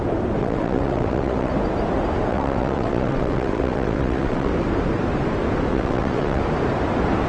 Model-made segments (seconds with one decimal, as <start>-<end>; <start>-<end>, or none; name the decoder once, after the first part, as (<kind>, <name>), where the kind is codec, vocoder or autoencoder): 0.4-1.5 (vocoder, WaveNeXt); 2.3-4.5; 5.7-6.4